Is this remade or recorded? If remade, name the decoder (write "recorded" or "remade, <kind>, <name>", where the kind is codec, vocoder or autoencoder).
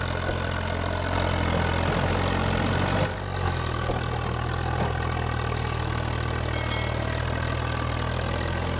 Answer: recorded